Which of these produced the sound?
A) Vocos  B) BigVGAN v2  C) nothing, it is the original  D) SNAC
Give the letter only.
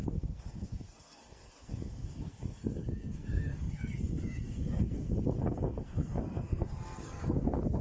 D